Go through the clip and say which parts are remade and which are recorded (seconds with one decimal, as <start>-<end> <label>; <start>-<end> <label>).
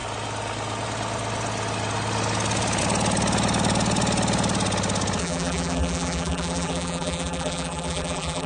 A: 0.0-5.2 recorded; 5.2-8.5 remade